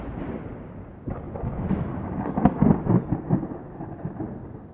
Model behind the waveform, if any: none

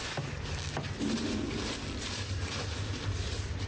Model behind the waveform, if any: none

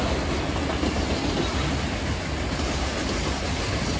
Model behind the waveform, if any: none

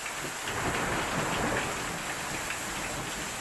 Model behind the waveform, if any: none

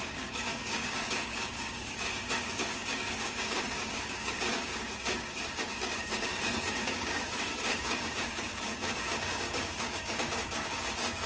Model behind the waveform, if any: codec, DAC